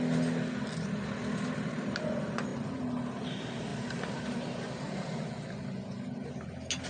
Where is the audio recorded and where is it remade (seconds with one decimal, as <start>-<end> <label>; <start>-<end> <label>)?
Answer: 0.0-3.7 recorded; 3.7-5.2 remade; 5.2-6.9 recorded